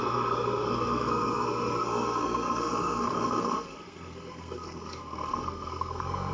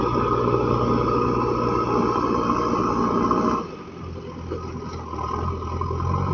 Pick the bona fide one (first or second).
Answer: second